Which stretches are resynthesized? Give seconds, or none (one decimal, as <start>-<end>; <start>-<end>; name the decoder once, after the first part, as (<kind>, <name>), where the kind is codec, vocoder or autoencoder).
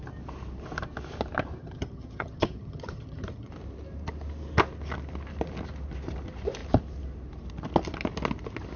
1.6-3.5 (vocoder, HiFi-GAN)